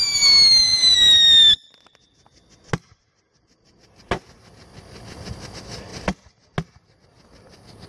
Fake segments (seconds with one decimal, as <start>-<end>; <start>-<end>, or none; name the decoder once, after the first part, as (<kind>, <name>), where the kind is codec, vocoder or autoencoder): none